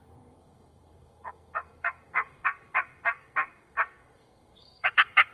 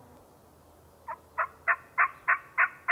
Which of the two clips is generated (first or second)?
first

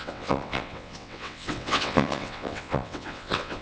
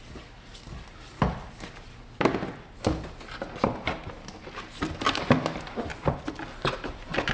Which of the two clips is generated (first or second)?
first